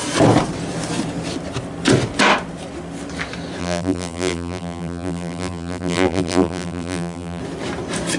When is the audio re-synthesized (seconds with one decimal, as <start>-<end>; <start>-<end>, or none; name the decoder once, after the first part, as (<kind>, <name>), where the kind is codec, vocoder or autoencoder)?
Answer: 3.6-7.4 (vocoder, BigVGAN v2)